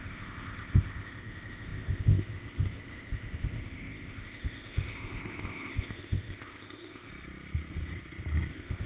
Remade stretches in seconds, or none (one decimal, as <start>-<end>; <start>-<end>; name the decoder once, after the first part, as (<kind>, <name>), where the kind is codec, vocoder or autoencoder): 0.0-7.1 (codec, ZipCodec); 8.5-8.9